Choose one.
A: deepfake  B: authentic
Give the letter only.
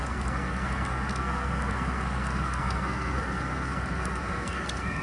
A